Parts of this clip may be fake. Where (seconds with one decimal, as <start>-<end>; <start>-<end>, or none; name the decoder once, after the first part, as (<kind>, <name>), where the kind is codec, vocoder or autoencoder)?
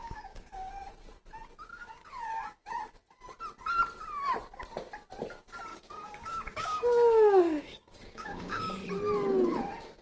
0.0-0.7 (codec, DAC); 1.7-2.6; 5.7-8.6